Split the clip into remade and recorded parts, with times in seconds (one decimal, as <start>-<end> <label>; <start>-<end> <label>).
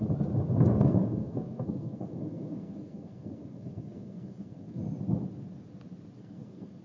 0.0-0.7 recorded; 0.7-4.8 remade; 4.8-6.2 recorded; 6.2-6.8 remade